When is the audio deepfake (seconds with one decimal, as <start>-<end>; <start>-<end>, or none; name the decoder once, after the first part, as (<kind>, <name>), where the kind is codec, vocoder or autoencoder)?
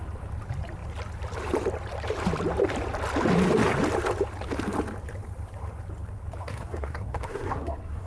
6.4-8.1 (codec, SNAC)